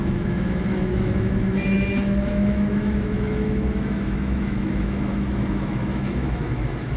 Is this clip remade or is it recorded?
remade